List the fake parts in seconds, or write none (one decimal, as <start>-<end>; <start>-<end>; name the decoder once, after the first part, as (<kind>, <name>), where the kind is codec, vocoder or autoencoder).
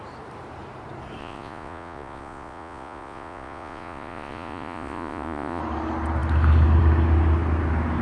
1.2-5.6 (vocoder, Vocos)